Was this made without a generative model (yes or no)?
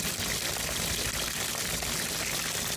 yes